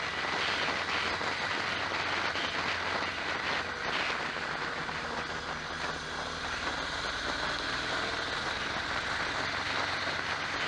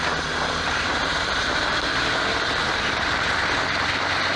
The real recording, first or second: first